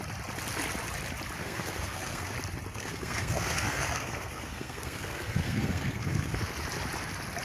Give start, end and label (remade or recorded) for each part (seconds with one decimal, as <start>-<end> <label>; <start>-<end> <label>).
0.0-1.4 recorded; 1.4-2.3 remade; 2.3-2.7 recorded; 2.7-6.5 remade; 6.5-7.4 recorded